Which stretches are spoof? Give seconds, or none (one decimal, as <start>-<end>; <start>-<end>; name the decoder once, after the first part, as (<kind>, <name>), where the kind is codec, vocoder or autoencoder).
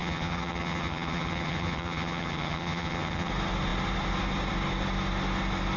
0.0-3.3 (vocoder, HiFi-GAN)